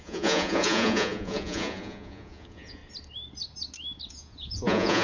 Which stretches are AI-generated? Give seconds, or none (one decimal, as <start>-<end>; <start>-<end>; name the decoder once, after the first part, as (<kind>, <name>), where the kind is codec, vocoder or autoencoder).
0.0-2.8 (vocoder, Vocos); 4.1-5.0

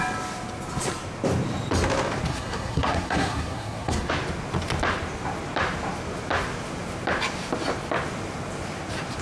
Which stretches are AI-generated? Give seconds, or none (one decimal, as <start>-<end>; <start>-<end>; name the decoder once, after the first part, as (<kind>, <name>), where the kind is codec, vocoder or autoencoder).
2.3-4.1 (codec, SNAC)

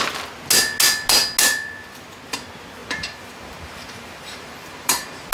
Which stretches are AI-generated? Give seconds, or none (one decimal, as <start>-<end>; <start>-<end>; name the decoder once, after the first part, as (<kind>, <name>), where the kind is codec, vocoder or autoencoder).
2.8-5.3 (vocoder, BigVGAN v2)

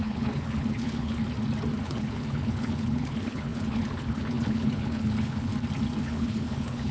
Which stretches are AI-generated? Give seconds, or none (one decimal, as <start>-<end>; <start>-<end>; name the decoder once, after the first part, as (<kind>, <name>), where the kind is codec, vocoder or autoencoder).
0.0-1.2 (codec, HILCodec); 1.8-5.5; 6.0-6.9

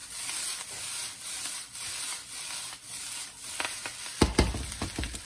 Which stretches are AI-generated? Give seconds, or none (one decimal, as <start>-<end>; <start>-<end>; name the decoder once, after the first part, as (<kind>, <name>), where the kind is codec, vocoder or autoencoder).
none

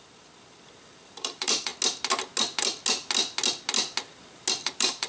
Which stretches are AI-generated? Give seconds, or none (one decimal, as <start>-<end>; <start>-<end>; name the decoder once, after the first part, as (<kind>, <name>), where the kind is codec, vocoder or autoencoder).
0.0-1.7 (vocoder, BigVGAN v2); 4.5-5.1